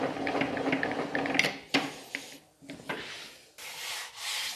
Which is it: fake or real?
real